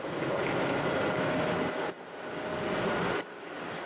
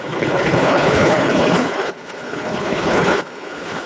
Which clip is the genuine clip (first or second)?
first